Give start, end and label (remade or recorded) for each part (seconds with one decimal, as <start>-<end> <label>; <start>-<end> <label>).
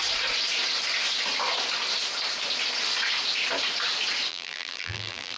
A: 0.0-4.3 recorded; 4.3-5.4 remade